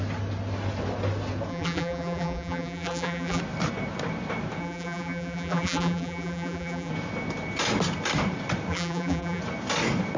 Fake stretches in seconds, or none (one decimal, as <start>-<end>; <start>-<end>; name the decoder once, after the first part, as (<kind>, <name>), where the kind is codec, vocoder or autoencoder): 1.5-3.4 (vocoder, BigVGAN v2); 4.6-6.9; 8.7-9.4